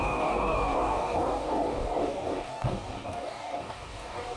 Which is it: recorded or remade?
remade